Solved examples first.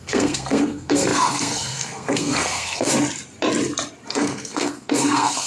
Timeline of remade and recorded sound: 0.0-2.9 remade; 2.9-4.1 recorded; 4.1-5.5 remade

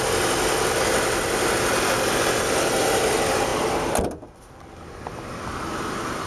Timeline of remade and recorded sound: 0.0-6.3 recorded

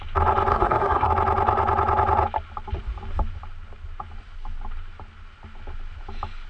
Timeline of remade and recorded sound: 0.0-0.5 recorded; 0.5-1.1 remade; 1.1-6.5 recorded

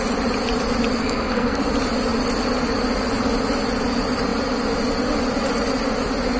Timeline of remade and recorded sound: 0.0-1.0 recorded; 1.0-1.6 remade; 1.6-6.4 recorded